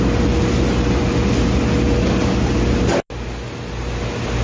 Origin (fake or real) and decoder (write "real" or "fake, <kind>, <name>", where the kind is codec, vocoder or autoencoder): real